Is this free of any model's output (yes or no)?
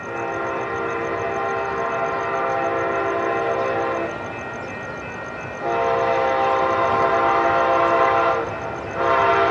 yes